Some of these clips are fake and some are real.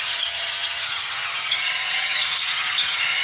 fake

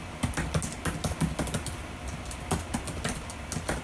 real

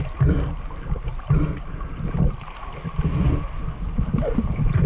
real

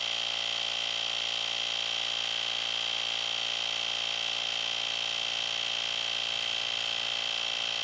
real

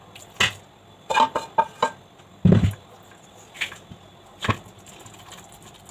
real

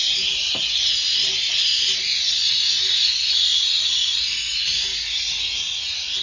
real